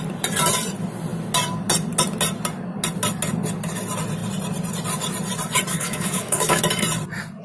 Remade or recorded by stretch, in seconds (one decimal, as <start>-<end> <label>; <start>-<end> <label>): 0.0-5.7 recorded; 5.7-6.6 remade; 6.6-7.4 recorded